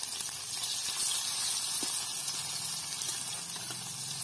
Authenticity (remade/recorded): recorded